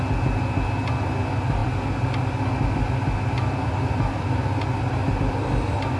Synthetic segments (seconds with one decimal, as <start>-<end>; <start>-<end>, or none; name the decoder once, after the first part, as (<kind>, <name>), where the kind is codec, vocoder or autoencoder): none